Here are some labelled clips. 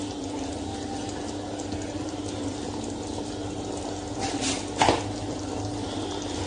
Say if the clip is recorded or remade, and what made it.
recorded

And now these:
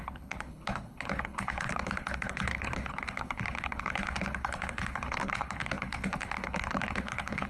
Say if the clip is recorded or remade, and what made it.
remade, codec, HILCodec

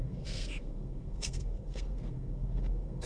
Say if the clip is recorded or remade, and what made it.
remade, codec, SNAC